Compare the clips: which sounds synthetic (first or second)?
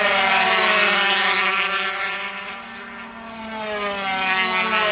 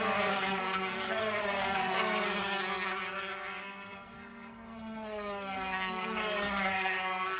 second